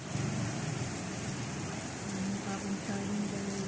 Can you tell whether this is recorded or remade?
recorded